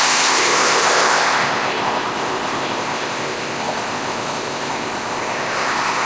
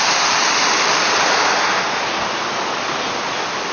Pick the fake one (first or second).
first